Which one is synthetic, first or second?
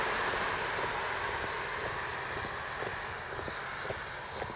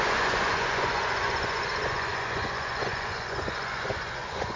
second